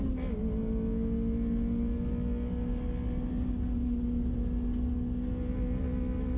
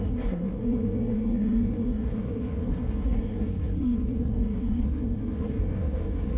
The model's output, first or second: second